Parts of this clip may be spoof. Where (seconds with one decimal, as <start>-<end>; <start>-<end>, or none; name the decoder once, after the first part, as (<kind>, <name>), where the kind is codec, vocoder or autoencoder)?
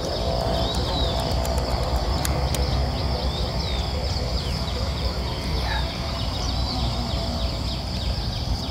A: 4.3-6.8 (vocoder, BigVGAN v2)